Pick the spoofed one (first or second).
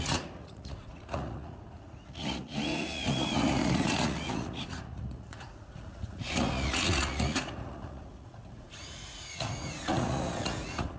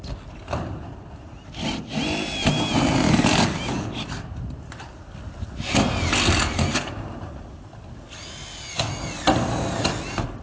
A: first